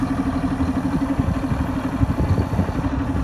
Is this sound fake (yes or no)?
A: no